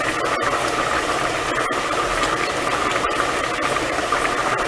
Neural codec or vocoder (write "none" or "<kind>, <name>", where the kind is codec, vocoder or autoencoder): none